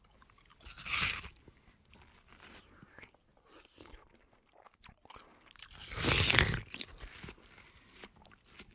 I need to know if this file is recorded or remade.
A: recorded